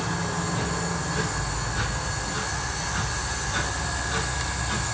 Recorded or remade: recorded